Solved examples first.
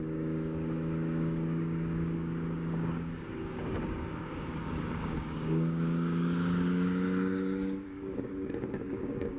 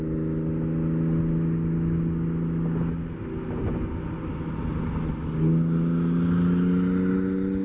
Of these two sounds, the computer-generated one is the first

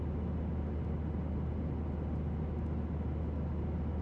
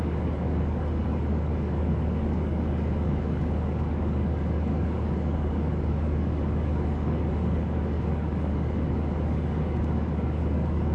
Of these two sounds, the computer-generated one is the second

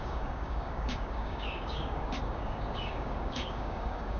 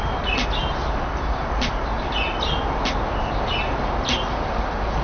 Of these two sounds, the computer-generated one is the first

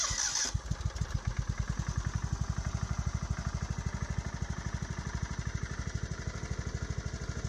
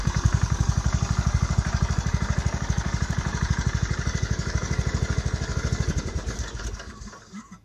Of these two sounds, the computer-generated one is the second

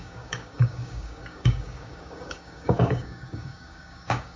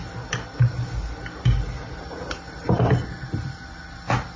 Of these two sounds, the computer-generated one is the first